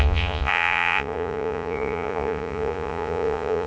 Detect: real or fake fake